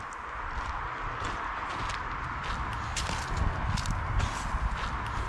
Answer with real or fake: real